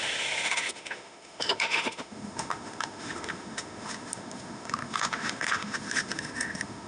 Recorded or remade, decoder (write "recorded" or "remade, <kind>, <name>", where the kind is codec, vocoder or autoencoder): remade, autoencoder, DAC-VAE